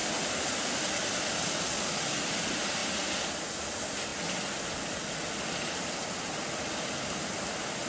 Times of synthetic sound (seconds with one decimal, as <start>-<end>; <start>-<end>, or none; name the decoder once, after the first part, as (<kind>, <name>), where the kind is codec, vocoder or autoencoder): none